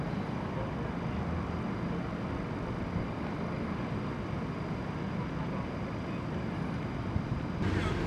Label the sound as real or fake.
real